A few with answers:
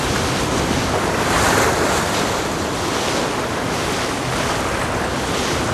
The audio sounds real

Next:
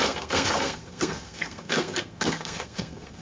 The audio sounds fake